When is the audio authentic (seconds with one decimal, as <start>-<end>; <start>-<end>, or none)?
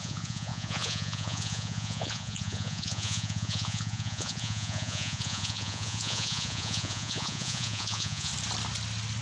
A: 8.3-9.2